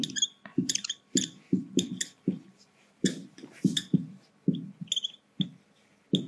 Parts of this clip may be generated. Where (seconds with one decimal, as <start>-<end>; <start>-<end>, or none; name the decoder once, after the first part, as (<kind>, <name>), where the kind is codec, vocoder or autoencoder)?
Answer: 0.5-4.2 (vocoder, BigVGAN v2)